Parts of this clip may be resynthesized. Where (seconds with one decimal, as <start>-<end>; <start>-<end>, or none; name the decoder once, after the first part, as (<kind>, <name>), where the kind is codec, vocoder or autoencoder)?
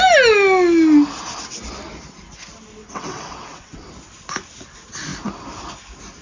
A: 2.8-3.9 (vocoder, WaveNeXt)